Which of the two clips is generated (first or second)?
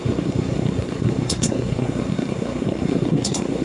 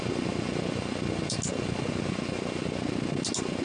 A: first